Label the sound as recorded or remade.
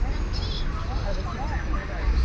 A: recorded